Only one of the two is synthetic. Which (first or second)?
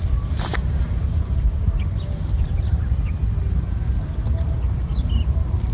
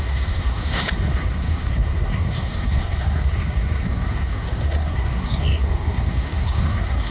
second